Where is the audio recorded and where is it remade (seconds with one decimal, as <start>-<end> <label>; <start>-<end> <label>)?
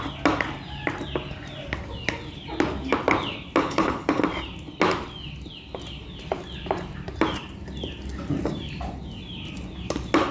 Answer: 0.0-3.6 recorded; 3.6-4.2 remade; 4.2-10.3 recorded